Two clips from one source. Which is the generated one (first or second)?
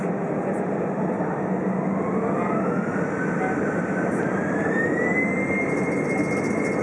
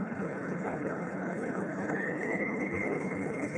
second